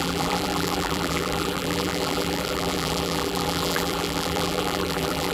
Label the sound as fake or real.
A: fake